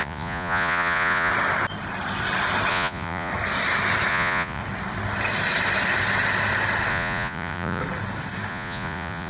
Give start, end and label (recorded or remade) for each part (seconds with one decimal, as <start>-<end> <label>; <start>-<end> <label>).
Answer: 0.0-1.3 remade; 1.3-2.7 recorded; 2.7-3.3 remade; 3.3-4.1 recorded; 4.1-4.6 remade; 4.6-6.9 recorded; 6.9-7.8 remade; 7.8-8.5 recorded; 8.5-9.3 remade